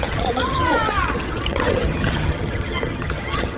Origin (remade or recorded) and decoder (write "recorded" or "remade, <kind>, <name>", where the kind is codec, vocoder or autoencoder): remade, vocoder, HiFi-GAN